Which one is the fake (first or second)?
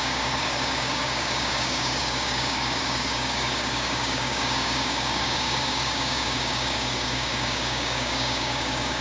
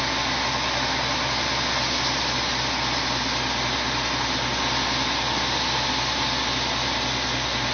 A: first